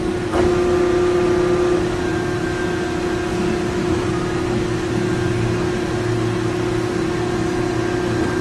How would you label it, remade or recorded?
recorded